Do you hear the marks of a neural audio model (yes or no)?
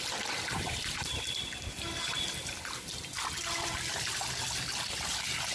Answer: no